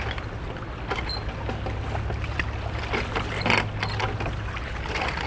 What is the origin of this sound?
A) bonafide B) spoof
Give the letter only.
A